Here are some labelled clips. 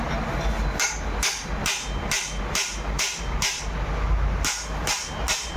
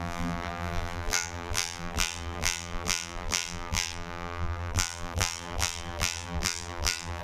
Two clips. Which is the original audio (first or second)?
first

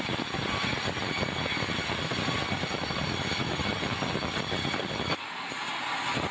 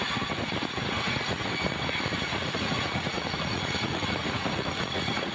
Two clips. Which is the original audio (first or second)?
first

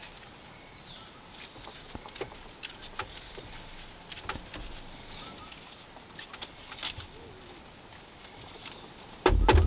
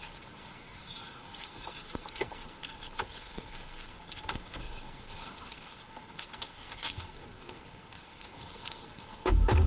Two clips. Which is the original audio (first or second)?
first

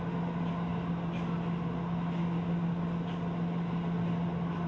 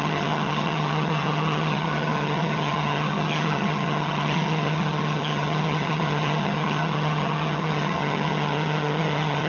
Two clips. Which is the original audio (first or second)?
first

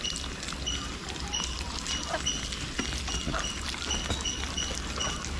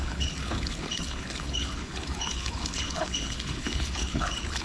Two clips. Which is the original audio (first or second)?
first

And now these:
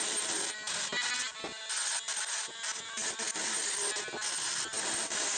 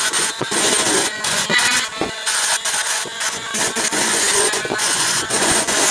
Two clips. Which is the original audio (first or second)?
first